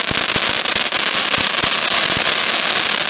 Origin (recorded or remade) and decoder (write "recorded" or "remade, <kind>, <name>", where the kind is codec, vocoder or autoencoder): recorded